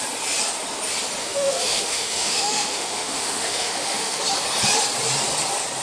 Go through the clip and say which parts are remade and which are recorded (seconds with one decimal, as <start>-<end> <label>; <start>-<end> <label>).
0.0-1.2 recorded; 1.2-4.2 remade; 4.2-5.8 recorded